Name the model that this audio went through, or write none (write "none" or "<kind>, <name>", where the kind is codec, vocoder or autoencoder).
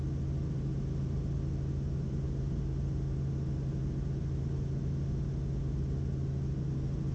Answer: none